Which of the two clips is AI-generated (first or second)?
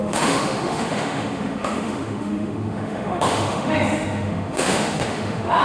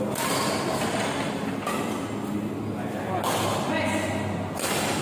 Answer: first